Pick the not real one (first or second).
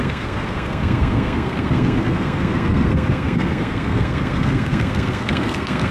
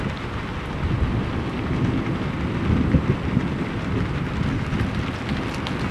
first